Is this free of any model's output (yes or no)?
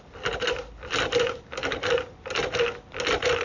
yes